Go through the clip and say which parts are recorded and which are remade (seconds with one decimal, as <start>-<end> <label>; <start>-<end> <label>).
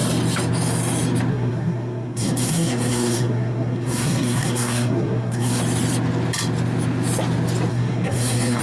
0.0-1.3 recorded; 1.3-5.6 remade; 5.6-7.7 recorded; 7.7-8.6 remade